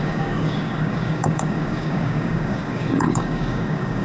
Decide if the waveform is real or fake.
fake